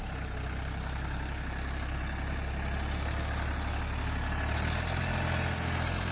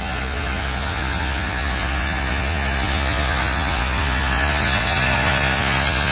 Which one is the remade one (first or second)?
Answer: second